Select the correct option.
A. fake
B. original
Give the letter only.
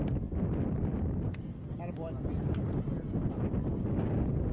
B